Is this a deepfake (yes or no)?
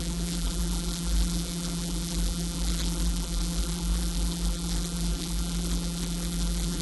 yes